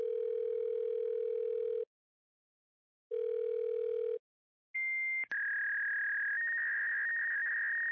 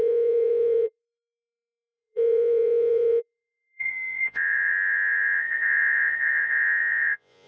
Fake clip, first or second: second